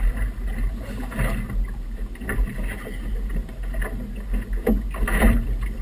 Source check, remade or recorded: recorded